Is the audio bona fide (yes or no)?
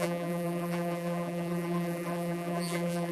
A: no